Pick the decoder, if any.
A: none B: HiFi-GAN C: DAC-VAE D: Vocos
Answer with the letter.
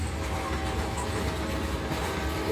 A